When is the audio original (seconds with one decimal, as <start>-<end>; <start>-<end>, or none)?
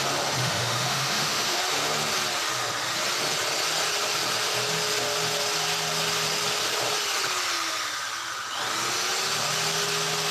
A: 0.0-0.4; 1.6-10.3